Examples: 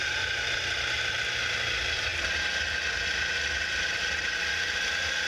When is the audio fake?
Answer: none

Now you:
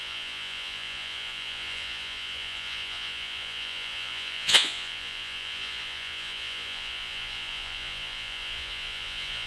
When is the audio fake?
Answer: 0.0-9.5 (vocoder, Vocos)

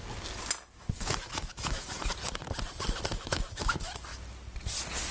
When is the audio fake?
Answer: 0.9-2.1 (autoencoder, DAC-VAE); 3.1-4.1

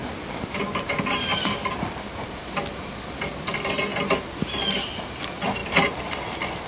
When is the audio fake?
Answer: none

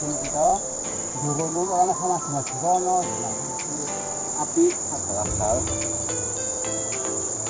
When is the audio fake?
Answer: 0.0-7.5 (vocoder, BigVGAN v2)

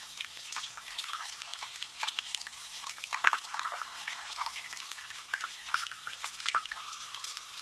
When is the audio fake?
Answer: 0.0-7.6 (codec, SNAC)